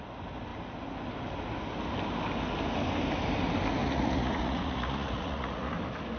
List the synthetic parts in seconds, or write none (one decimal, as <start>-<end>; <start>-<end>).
3.8-5.8